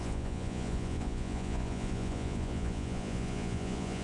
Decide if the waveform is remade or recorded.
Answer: remade